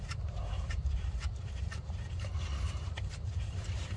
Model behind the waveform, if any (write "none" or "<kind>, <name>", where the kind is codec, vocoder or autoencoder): vocoder, BigVGAN v2